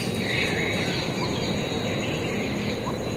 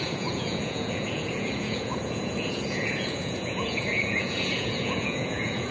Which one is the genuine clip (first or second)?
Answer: first